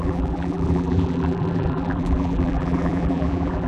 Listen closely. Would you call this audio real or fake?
fake